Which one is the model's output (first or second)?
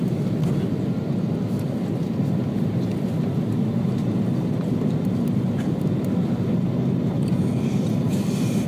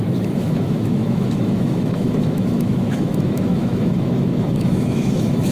second